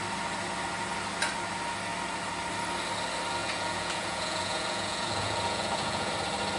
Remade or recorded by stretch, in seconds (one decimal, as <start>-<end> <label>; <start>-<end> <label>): 0.0-3.4 recorded; 3.4-6.1 remade; 6.1-6.6 recorded